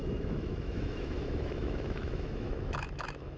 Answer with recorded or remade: remade